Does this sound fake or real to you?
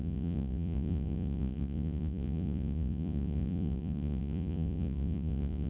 fake